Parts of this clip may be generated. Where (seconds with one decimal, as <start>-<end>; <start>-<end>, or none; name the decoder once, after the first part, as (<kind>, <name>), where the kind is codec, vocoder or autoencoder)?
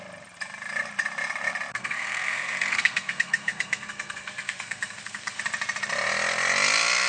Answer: 1.7-5.4 (codec, SNAC)